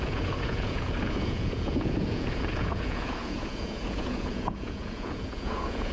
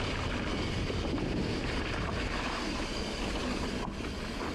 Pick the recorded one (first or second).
second